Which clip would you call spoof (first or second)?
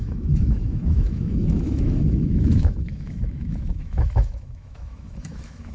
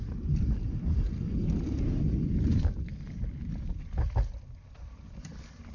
first